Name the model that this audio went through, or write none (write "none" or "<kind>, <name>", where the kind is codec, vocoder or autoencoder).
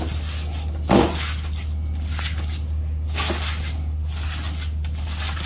none